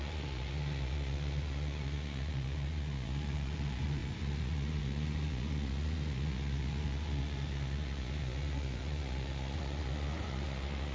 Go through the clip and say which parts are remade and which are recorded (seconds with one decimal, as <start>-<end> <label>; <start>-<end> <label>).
0.0-10.9 remade